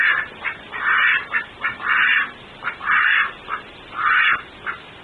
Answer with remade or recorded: remade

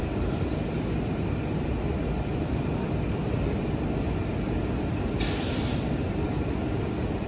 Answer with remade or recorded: recorded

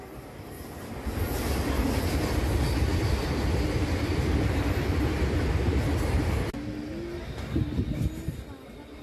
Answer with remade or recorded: recorded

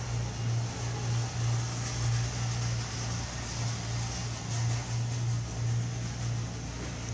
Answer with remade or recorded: recorded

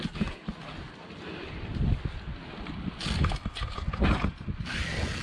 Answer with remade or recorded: recorded